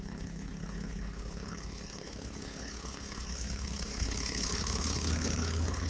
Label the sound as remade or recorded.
remade